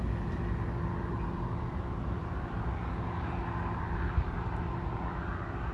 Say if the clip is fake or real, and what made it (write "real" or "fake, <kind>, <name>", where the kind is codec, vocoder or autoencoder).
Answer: real